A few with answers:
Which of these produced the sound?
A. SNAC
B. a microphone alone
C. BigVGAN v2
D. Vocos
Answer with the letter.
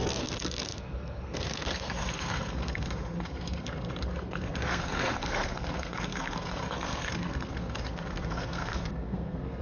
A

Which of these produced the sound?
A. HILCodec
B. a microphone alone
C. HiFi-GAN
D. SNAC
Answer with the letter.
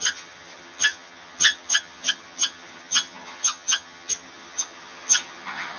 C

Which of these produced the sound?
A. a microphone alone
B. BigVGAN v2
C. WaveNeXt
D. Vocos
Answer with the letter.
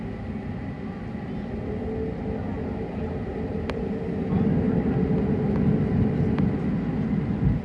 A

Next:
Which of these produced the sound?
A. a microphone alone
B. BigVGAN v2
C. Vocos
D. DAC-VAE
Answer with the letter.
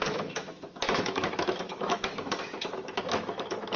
D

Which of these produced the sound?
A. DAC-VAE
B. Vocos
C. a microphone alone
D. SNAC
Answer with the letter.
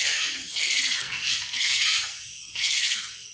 D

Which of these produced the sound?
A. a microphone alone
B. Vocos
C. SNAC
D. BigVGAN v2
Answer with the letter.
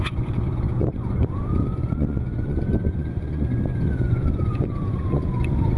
B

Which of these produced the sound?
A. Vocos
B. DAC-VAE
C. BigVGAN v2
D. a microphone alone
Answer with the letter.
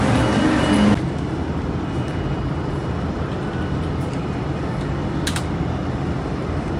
D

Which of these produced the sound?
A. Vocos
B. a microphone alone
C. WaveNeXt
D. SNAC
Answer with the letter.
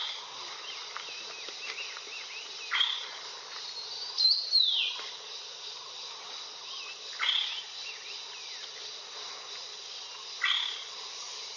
B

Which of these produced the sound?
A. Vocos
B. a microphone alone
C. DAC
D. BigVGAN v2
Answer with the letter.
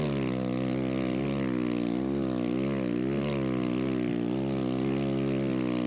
B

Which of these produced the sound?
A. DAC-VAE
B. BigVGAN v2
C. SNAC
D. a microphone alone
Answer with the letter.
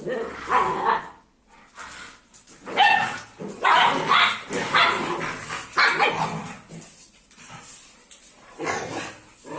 D